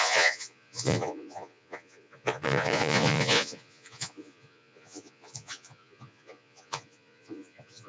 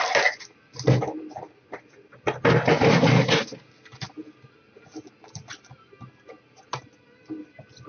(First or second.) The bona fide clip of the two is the second